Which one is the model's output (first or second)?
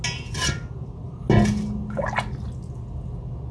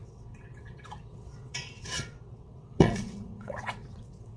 second